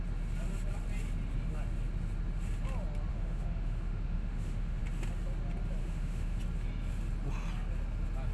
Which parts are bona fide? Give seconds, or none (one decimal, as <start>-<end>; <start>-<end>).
0.0-3.1; 4.8-5.8; 6.4-8.3